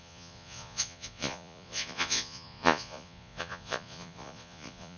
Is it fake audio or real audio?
fake